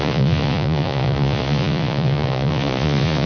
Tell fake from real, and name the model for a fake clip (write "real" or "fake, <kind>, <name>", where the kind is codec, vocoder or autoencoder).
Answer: fake, vocoder, Vocos